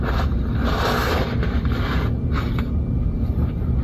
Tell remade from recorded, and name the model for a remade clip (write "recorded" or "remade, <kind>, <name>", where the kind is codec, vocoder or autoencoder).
remade, vocoder, BigVGAN v2